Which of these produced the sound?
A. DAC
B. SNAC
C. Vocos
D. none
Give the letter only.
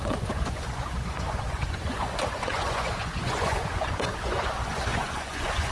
C